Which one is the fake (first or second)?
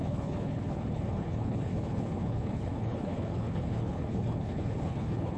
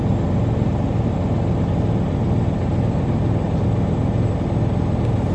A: first